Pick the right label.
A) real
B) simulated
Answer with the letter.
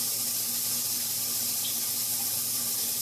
A